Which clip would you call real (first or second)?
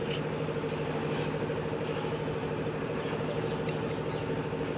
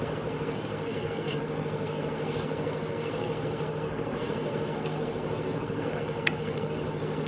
first